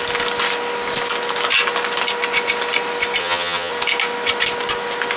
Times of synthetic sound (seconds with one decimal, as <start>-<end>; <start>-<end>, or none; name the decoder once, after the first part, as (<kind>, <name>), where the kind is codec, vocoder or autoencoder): 3.2-3.7 (vocoder, HiFi-GAN)